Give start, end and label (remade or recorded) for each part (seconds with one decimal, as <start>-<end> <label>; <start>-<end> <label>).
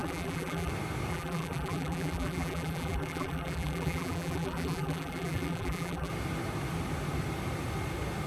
0.0-0.7 remade; 0.7-1.1 recorded; 1.1-6.1 remade; 6.1-8.3 recorded